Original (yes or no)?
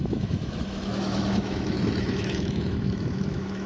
no